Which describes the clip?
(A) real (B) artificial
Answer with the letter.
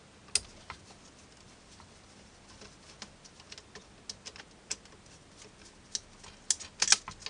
A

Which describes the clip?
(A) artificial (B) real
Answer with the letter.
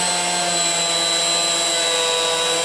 B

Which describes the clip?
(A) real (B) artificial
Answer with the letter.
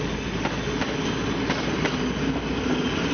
A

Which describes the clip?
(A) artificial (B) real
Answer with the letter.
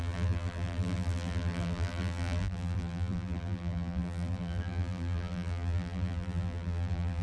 A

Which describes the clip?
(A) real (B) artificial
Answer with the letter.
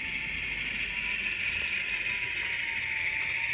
A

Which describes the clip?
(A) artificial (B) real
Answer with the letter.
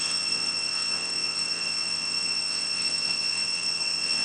A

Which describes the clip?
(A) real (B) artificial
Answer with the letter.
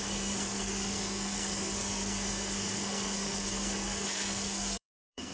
B